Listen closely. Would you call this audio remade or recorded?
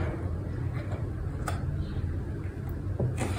recorded